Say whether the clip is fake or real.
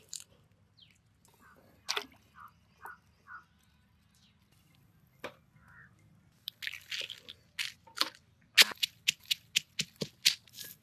real